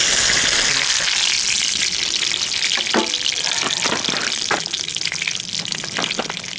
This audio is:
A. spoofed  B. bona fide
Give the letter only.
B